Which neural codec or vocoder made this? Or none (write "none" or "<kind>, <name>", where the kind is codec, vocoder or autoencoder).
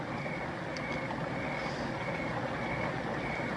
none